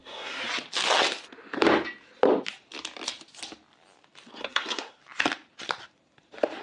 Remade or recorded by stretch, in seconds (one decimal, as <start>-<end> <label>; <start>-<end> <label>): 0.0-0.4 remade; 0.4-4.4 recorded; 4.4-5.0 remade; 5.0-6.6 recorded